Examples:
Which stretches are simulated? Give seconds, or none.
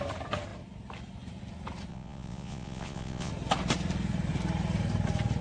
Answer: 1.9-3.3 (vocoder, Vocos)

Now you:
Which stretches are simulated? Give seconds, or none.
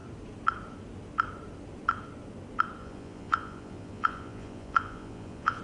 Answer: 2.8-5.6 (vocoder, Vocos)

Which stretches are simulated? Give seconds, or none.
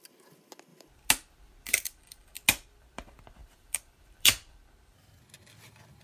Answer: 3.4-4.6 (vocoder, BigVGAN v2)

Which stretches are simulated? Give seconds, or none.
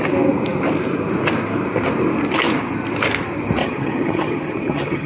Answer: 3.6-5.1 (vocoder, HiFi-GAN)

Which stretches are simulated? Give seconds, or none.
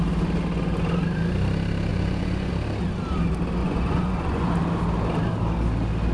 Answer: 1.9-2.5 (vocoder, Vocos); 3.6-4.5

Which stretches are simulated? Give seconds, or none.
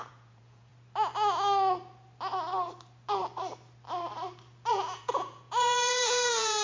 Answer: 0.0-0.7 (vocoder, Vocos); 4.7-6.6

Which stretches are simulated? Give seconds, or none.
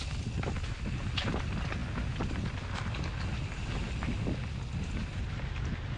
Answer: none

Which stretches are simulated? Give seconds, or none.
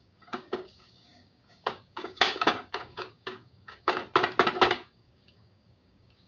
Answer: 0.0-4.0 (codec, DAC); 4.6-6.3